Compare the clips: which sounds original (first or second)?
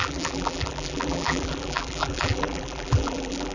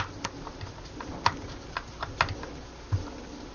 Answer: second